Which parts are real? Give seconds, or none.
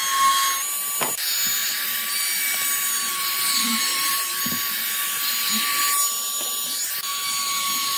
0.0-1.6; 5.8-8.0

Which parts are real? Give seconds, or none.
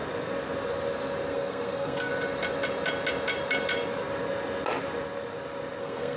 0.0-1.3; 2.1-5.8